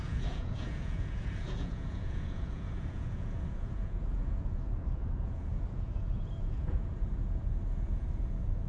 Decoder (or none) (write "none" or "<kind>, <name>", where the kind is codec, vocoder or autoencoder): vocoder, Vocos